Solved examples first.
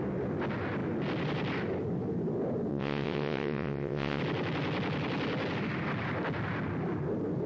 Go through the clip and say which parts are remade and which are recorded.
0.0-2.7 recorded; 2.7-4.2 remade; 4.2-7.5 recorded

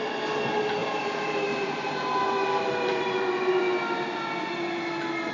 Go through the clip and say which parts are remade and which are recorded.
0.0-0.8 recorded; 0.8-3.6 remade; 3.6-5.3 recorded

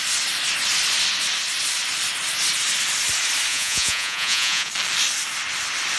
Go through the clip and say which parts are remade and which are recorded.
0.0-3.5 recorded; 3.5-4.7 remade; 4.7-6.0 recorded

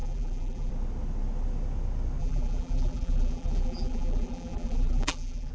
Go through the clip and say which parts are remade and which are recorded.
0.0-0.7 remade; 0.7-2.2 recorded; 2.2-5.5 remade

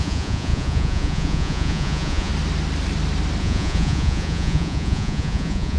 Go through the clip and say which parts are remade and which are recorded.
0.0-2.3 remade; 2.3-3.4 recorded; 3.4-5.8 remade

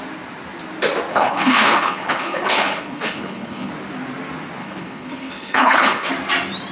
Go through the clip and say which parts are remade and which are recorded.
0.0-1.1 recorded; 1.1-3.7 remade; 3.7-4.6 recorded; 4.6-6.1 remade; 6.1-6.7 recorded